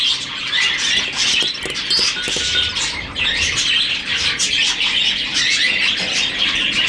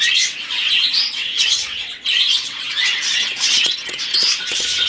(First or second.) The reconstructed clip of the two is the second